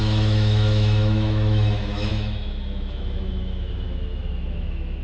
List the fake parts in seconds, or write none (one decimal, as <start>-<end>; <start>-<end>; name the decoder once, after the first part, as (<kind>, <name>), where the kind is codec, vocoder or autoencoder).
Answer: 0.0-5.0 (autoencoder, DAC-VAE)

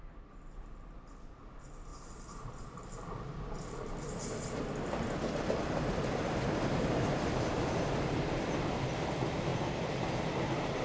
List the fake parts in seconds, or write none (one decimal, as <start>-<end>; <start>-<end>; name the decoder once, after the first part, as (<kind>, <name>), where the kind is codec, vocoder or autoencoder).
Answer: none

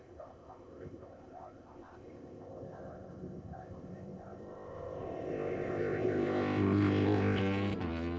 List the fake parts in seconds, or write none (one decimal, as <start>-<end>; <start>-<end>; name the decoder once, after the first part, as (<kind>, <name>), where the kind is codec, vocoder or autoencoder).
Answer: 0.0-7.4 (codec, ZipCodec)

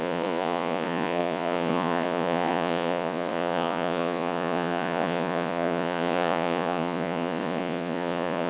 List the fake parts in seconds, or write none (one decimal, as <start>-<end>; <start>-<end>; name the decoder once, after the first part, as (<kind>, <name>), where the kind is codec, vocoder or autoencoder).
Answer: 0.0-8.5 (vocoder, Vocos)

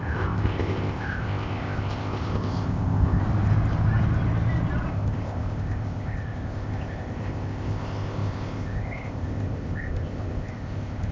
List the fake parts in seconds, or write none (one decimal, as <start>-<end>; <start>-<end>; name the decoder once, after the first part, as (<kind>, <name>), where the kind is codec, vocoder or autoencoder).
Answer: 0.0-3.2 (codec, ZipCodec); 4.9-11.1

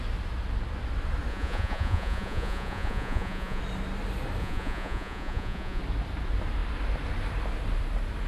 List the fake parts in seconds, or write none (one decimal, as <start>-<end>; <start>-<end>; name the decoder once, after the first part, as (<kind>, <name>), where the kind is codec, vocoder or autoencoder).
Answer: 1.3-3.6 (vocoder, Vocos); 4.4-5.8

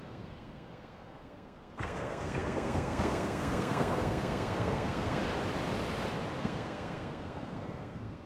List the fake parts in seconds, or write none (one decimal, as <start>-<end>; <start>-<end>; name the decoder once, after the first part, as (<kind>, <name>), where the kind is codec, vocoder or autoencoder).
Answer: 0.0-5.2 (codec, SNAC); 6.4-8.3